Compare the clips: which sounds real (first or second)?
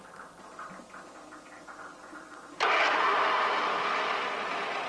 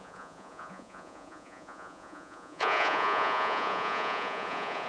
first